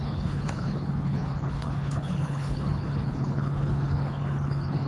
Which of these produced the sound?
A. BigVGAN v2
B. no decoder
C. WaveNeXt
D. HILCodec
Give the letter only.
D